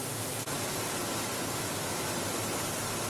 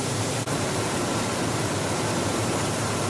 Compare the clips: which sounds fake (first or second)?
second